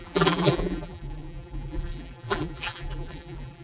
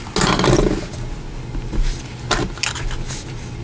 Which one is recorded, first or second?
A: second